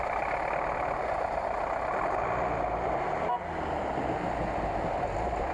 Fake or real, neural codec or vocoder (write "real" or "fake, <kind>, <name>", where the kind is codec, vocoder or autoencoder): real